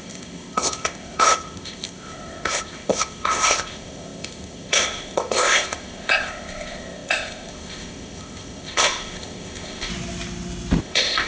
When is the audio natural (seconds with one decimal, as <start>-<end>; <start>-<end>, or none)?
9.9-10.8